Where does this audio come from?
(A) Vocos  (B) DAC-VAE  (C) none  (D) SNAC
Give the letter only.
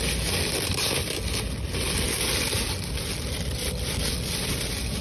C